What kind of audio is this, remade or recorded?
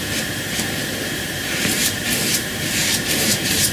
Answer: remade